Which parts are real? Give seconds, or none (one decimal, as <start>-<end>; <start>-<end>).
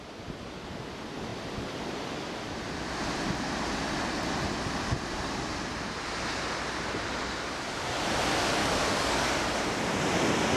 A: 0.0-8.6; 9.6-10.6